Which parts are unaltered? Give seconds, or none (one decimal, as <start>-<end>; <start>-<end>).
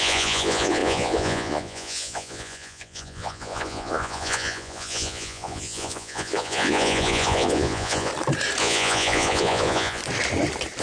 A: 8.1-8.6; 10.0-10.8